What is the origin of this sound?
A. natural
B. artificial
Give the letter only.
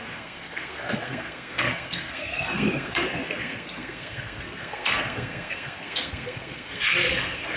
B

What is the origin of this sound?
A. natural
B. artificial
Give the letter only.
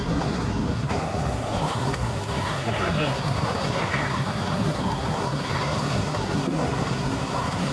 B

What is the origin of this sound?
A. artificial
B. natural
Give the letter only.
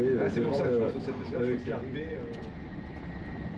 B